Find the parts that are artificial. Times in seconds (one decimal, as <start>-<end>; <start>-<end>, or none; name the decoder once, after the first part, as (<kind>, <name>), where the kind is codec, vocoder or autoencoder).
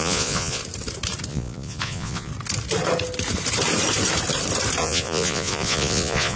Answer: 0.0-0.6 (vocoder, Vocos); 1.3-2.3; 4.8-6.4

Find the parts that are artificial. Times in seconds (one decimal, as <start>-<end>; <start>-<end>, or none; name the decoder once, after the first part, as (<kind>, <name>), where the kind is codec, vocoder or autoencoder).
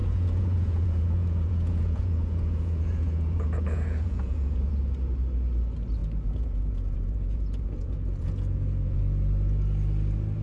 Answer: 0.0-4.7 (vocoder, Vocos); 6.0-9.0